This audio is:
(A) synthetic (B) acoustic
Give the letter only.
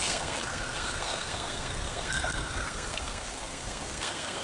A